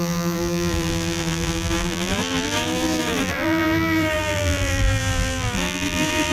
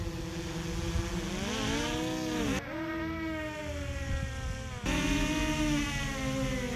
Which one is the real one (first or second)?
second